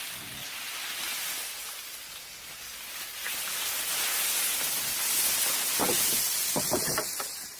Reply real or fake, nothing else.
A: real